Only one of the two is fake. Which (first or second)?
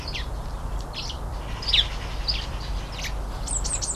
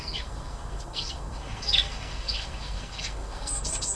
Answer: second